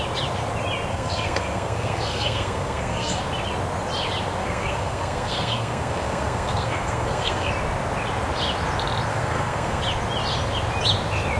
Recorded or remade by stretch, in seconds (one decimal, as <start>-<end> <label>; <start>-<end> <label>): 0.0-0.9 recorded; 0.9-3.2 remade; 3.2-4.4 recorded; 4.4-7.5 remade; 7.5-9.1 recorded; 9.1-9.8 remade; 9.8-11.4 recorded